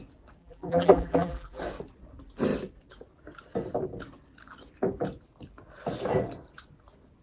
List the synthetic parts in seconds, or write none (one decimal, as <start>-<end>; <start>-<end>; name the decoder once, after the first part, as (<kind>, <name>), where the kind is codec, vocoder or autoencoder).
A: 0.4-1.6 (vocoder, BigVGAN v2)

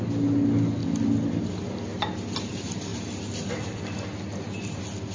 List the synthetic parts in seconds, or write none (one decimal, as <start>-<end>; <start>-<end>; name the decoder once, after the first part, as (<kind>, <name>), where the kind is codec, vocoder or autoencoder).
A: none

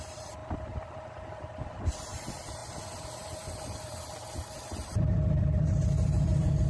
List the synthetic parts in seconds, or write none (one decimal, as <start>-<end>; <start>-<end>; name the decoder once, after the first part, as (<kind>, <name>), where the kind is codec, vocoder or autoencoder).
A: 0.0-2.6 (vocoder, BigVGAN v2); 4.0-6.7

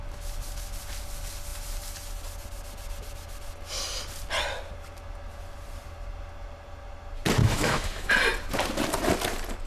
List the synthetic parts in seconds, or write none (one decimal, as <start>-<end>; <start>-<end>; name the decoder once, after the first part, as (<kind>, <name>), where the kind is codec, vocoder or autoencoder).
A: 7.4-8.1 (autoencoder, DAC-VAE)

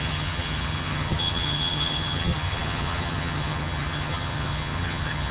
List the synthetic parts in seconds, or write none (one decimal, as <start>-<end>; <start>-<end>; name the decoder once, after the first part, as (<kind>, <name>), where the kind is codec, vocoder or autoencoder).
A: 0.0-5.3 (vocoder, HiFi-GAN)

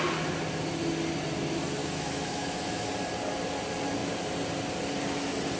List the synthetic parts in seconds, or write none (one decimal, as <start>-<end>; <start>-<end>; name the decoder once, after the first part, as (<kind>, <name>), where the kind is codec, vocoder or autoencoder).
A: 1.8-2.9 (autoencoder, DAC-VAE)

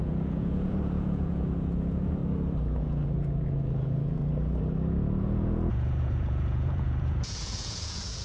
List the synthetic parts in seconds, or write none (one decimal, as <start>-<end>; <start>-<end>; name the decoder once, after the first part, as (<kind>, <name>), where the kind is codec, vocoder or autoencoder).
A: 0.0-2.2 (vocoder, Vocos); 2.8-4.2; 5.2-8.2

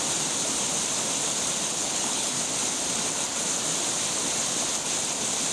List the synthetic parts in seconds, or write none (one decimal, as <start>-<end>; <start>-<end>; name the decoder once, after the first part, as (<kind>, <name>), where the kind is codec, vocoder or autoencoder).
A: 1.8-2.4 (codec, HILCodec)